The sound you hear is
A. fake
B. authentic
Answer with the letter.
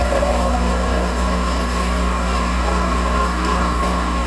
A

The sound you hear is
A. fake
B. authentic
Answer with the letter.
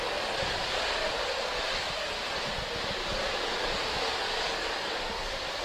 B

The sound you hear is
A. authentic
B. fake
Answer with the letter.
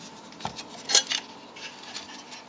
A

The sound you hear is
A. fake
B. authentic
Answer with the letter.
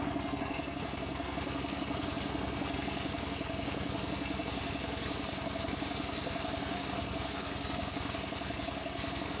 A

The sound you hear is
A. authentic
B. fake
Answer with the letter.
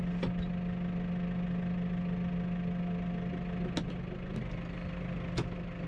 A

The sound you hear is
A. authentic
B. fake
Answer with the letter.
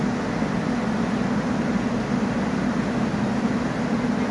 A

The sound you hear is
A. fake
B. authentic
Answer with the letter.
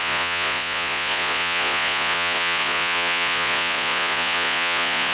A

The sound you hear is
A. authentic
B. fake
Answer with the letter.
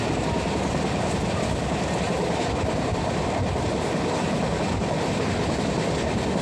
A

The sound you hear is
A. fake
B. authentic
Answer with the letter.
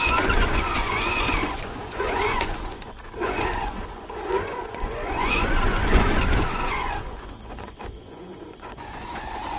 A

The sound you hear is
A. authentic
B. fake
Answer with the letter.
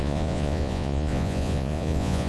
B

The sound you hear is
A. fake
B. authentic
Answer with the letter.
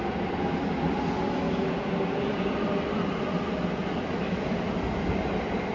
B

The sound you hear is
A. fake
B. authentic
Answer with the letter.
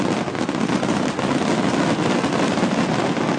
B